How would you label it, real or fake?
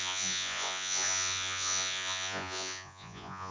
fake